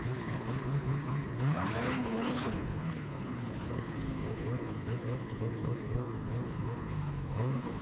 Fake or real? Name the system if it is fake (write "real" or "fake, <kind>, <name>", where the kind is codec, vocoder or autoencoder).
fake, codec, HILCodec